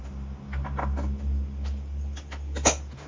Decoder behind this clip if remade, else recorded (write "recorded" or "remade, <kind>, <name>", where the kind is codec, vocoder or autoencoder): recorded